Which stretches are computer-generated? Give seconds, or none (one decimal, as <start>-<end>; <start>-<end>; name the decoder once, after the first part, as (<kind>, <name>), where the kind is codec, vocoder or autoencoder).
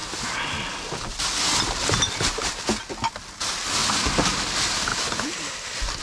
0.0-1.7 (vocoder, BigVGAN v2); 3.8-4.4; 4.9-6.0